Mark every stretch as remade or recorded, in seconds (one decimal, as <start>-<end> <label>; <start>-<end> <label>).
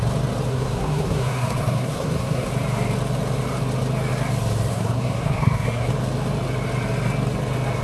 0.0-0.5 recorded; 0.5-2.5 remade; 2.5-4.7 recorded; 4.7-5.9 remade; 5.9-7.8 recorded